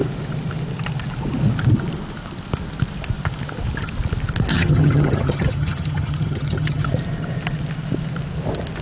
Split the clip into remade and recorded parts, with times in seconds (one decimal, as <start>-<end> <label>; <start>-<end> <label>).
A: 0.0-4.5 recorded; 4.5-6.9 remade; 6.9-8.8 recorded